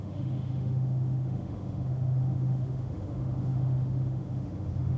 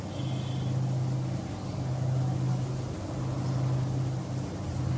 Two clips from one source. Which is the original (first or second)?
second